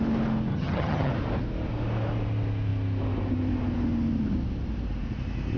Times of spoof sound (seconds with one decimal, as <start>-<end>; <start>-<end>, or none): 0.5-1.1